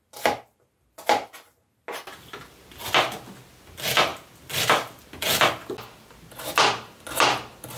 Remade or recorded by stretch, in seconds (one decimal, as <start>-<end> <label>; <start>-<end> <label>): 0.0-7.8 recorded